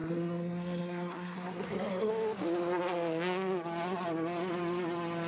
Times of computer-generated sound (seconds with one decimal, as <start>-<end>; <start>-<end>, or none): 0.0-2.1

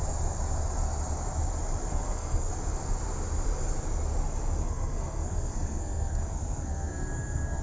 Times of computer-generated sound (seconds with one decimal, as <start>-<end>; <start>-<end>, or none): 1.9-2.5; 4.6-7.6

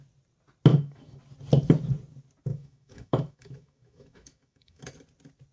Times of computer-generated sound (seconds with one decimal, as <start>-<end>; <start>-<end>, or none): 0.7-1.2; 2.5-4.9